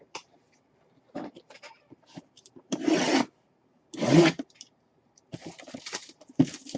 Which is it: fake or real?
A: fake